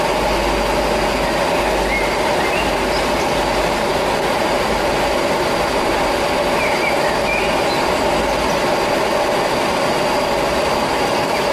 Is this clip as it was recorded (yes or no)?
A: yes